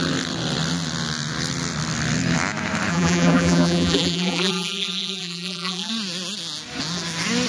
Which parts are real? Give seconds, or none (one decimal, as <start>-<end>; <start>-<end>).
0.0-2.9; 5.9-7.5